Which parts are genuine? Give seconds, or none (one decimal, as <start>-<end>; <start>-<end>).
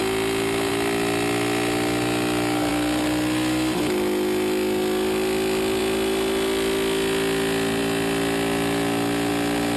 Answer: 0.0-9.8